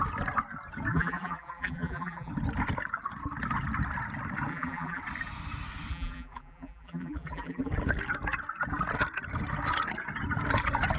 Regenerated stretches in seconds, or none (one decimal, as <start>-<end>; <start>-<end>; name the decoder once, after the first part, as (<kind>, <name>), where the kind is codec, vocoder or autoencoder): 0.9-2.3 (vocoder, BigVGAN v2); 4.5-5.0; 5.9-7.7